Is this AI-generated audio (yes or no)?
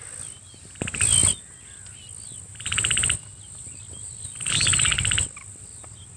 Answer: no